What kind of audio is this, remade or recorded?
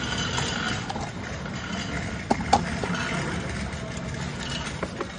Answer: recorded